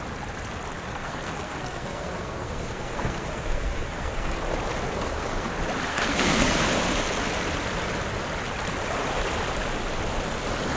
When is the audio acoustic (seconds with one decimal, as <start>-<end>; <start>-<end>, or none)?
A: 0.0-0.9; 4.4-4.9; 5.5-5.9; 6.7-10.8